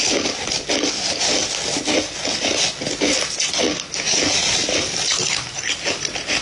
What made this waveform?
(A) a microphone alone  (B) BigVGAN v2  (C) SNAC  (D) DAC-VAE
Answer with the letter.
A